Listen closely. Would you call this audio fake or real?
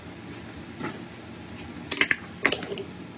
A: real